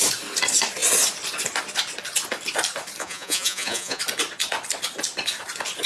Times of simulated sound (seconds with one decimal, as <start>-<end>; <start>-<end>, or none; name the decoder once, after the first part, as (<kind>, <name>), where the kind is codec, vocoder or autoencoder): 3.0-4.0 (vocoder, Vocos)